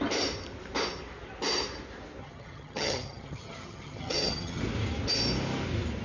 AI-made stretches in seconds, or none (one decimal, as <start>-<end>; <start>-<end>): 2.2-4.6

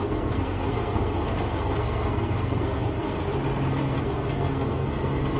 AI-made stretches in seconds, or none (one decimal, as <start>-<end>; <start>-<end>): 0.0-3.2; 3.7-5.4

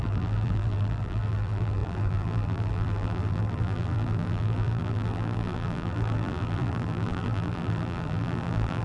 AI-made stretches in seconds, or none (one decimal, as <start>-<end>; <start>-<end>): 0.0-8.8

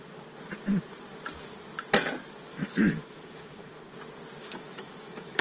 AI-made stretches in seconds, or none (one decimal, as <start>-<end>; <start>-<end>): 2.5-3.8; 4.4-5.4